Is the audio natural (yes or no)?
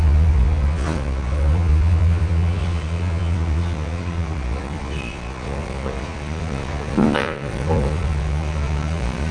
no